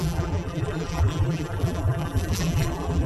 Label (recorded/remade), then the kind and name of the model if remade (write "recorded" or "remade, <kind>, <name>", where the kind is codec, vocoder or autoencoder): remade, vocoder, BigVGAN v2